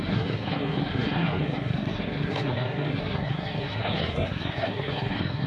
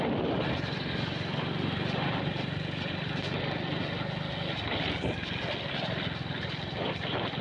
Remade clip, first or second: first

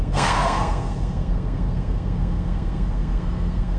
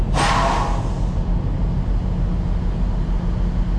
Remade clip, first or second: first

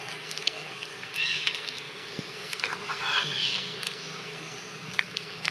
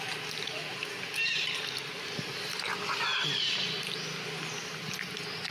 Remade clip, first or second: first